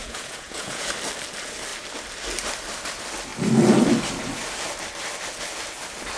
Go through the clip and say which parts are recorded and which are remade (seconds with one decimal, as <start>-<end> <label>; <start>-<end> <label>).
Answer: 0.0-0.9 remade; 0.9-6.2 recorded